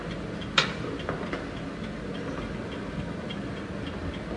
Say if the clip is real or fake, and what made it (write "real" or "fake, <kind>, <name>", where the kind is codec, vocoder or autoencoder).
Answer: real